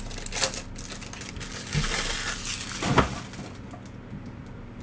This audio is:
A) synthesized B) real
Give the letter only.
B